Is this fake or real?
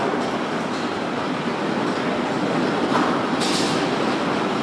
real